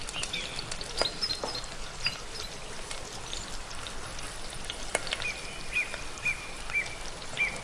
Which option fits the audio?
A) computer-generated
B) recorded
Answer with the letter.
B